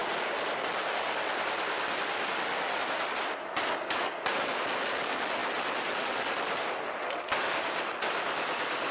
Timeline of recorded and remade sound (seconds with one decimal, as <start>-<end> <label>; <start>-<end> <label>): 0.0-8.9 recorded